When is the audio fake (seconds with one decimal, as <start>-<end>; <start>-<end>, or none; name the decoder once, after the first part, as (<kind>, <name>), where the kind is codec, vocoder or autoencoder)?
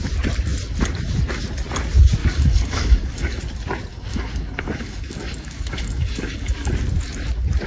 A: 2.2-3.4 (codec, DAC); 3.9-6.7